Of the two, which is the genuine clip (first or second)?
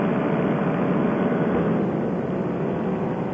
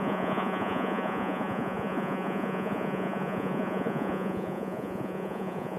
first